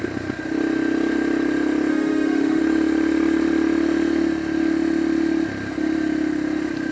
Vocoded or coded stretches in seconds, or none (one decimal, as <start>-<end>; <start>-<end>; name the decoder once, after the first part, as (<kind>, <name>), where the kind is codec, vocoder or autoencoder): 1.9-2.6 (autoencoder, DAC-VAE)